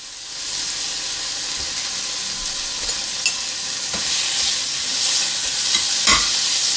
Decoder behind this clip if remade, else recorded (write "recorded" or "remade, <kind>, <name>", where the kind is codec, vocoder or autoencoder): recorded